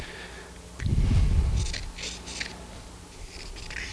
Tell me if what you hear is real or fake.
real